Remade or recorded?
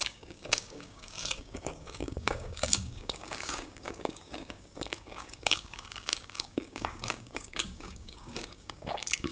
remade